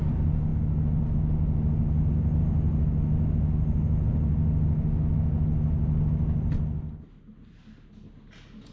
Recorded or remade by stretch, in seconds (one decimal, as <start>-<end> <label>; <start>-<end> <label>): 0.0-8.7 recorded